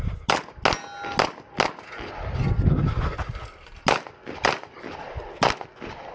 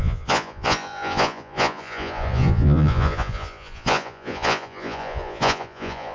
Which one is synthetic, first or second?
second